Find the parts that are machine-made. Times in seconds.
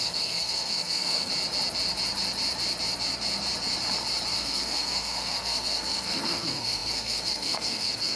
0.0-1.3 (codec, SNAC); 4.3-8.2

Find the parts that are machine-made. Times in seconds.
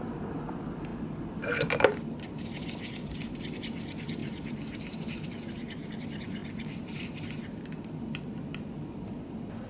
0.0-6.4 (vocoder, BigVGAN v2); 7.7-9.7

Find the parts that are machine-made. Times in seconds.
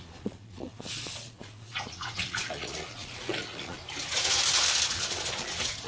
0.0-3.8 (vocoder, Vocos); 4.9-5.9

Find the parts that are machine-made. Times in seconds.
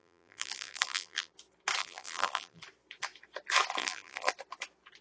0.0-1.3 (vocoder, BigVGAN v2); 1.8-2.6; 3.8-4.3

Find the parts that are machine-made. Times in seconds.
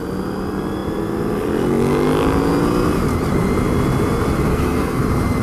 4.5-5.0 (codec, SNAC)